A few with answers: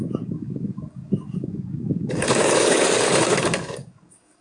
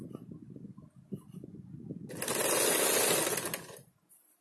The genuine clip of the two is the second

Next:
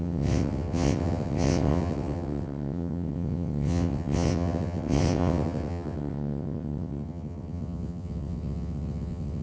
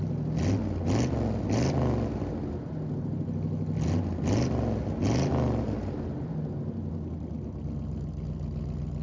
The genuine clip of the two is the second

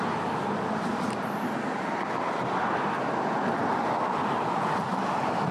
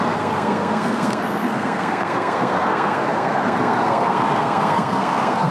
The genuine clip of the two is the first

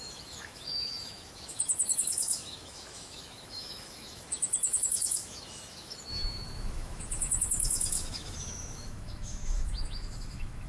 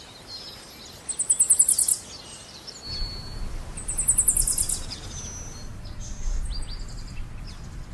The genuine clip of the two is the second